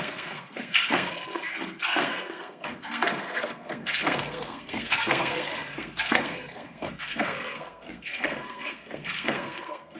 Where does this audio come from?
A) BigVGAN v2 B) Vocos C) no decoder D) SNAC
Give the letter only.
D